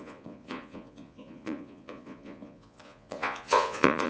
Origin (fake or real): fake